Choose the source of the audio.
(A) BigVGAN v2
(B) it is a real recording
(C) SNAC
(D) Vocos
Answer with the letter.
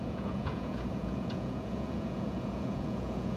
D